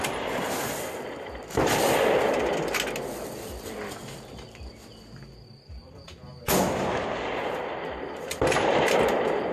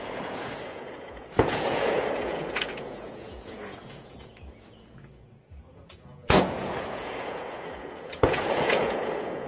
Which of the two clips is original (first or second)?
first